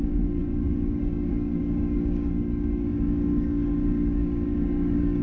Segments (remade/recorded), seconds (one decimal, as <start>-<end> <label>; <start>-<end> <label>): 0.0-5.2 remade